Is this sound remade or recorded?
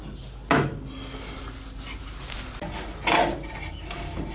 recorded